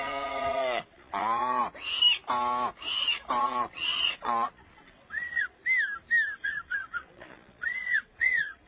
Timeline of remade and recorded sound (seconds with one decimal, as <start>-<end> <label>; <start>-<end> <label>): 0.0-1.6 remade; 1.6-3.4 recorded; 3.4-5.6 remade; 5.6-6.4 recorded; 6.4-8.7 remade